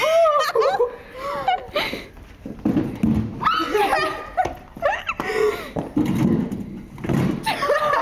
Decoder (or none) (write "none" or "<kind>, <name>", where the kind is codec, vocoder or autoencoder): none